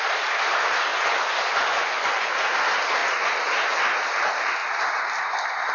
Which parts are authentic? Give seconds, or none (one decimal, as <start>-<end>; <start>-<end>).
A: 0.0-0.9; 2.3-5.7